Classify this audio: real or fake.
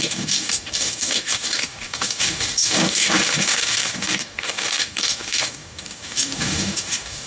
fake